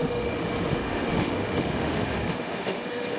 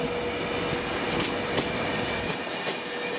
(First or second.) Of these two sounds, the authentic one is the second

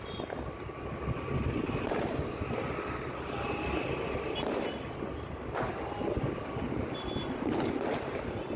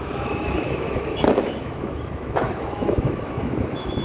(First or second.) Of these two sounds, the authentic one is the first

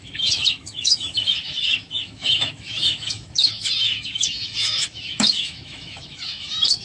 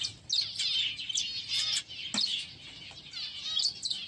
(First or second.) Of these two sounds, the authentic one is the second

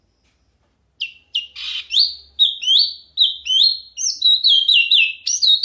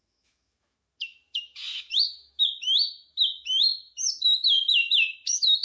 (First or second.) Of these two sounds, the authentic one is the first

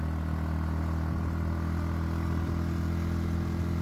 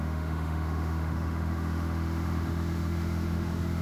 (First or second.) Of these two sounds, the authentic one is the first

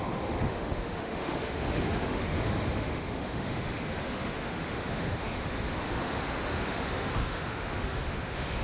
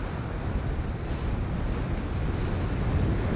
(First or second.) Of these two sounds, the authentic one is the second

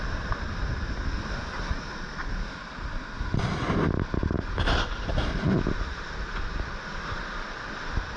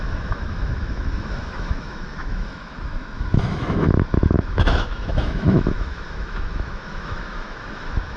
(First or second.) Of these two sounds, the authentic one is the first